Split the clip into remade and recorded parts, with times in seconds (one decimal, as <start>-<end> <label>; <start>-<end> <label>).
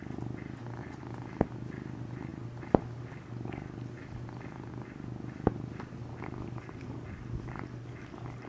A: 0.0-8.5 recorded